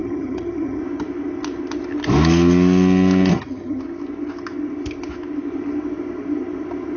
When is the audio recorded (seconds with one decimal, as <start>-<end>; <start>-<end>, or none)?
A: 0.8-3.3; 3.8-7.0